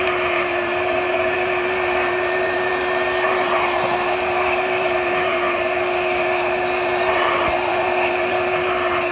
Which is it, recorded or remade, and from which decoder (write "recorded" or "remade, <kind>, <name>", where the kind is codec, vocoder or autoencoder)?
remade, vocoder, BigVGAN v2